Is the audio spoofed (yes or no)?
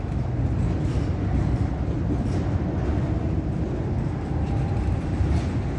no